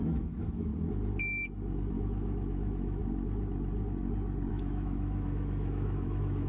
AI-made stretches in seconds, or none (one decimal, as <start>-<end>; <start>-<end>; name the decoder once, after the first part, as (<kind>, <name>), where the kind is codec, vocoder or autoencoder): 0.0-0.7 (autoencoder, DAC-VAE); 1.9-3.0; 4.5-6.5